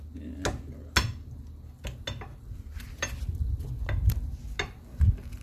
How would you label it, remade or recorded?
recorded